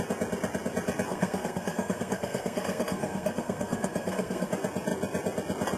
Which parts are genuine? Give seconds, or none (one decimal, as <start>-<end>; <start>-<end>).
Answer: 0.0-1.1; 4.5-5.8